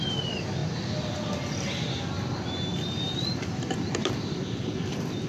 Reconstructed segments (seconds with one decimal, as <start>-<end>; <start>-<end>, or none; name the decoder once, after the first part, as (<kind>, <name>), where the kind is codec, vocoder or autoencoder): 0.6-1.4 (vocoder, BigVGAN v2); 2.7-4.7